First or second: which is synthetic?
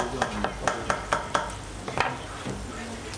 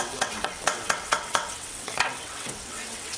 second